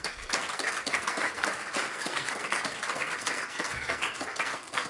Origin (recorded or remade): remade